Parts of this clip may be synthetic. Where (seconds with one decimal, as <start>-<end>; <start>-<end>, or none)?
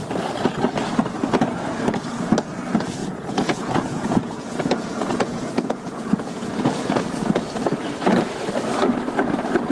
3.0-7.1